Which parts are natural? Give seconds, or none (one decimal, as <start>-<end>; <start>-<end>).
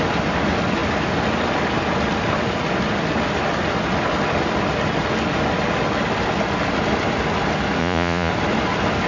0.0-7.8; 8.3-9.1